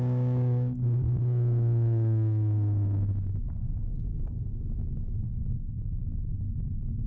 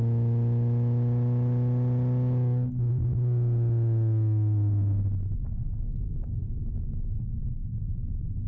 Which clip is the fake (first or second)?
first